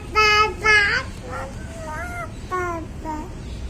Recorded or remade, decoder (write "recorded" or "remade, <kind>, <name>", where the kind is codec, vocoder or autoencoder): recorded